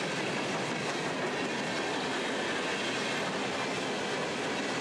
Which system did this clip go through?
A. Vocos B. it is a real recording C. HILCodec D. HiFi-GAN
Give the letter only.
B